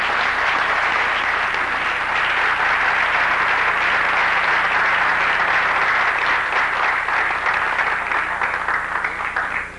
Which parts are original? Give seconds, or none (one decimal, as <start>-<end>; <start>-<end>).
0.0-9.8